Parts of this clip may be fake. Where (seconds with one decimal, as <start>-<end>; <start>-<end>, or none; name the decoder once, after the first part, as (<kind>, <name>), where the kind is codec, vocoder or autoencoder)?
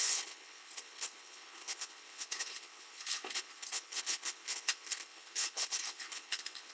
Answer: 0.0-6.7 (codec, HILCodec)